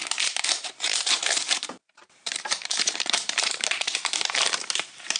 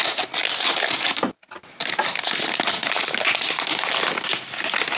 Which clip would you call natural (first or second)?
second